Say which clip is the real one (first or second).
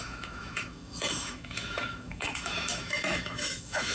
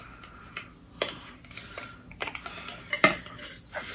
second